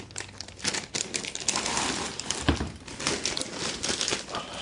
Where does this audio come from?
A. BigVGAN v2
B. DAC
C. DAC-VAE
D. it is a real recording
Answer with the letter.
D